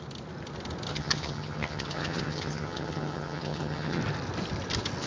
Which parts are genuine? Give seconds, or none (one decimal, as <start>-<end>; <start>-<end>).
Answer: 0.0-0.9; 4.0-5.1